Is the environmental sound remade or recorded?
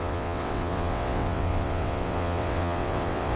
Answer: remade